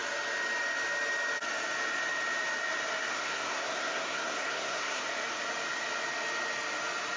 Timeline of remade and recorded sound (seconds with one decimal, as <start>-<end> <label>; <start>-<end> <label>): 0.0-3.1 recorded; 3.1-5.0 remade; 5.0-7.2 recorded